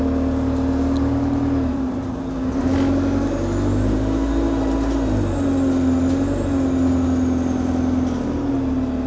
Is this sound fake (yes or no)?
no